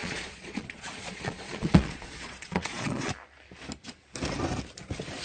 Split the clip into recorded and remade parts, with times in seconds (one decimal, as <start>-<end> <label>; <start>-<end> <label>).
0.0-3.1 remade; 3.1-5.2 recorded